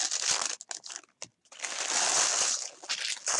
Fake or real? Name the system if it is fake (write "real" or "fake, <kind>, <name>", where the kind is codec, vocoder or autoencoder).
real